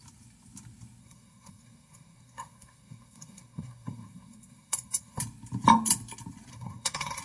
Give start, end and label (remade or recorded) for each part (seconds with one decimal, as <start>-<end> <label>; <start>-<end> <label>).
0.0-1.0 recorded; 1.0-5.2 remade; 5.2-6.5 recorded; 6.5-7.2 remade